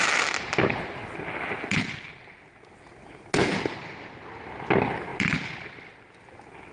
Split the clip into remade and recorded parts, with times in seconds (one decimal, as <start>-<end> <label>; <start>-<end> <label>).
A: 0.0-6.7 recorded